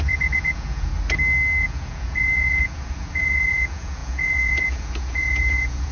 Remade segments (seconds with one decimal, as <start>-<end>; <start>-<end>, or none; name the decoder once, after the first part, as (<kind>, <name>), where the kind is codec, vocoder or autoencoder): 0.0-0.9 (vocoder, Vocos); 1.6-5.9